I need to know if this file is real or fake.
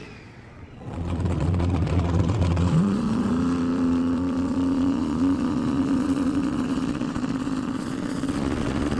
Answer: fake